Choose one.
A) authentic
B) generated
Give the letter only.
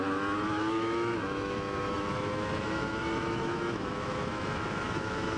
B